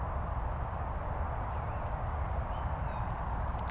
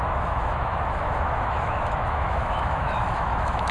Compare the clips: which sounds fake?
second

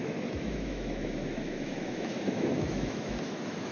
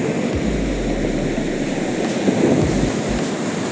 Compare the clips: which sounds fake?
first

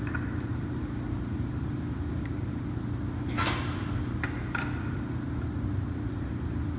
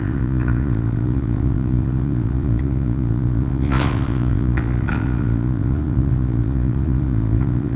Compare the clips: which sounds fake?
second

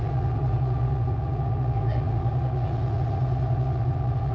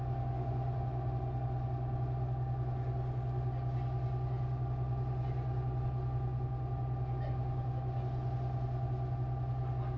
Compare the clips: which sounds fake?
first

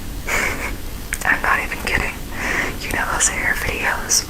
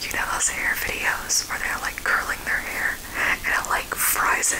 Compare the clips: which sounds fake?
first